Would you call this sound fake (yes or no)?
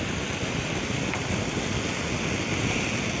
no